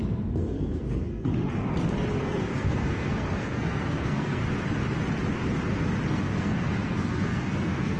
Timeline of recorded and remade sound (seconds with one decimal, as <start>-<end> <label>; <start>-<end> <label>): 0.0-1.3 remade; 1.3-2.2 recorded; 2.2-4.4 remade; 4.4-6.1 recorded; 6.1-8.0 remade